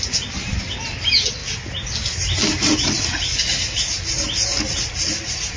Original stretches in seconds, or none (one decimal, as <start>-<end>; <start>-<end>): 0.0-1.4; 3.0-5.6